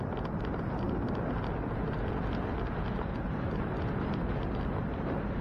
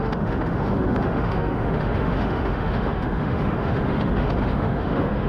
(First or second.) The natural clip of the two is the first